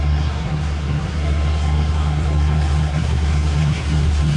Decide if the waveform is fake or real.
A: fake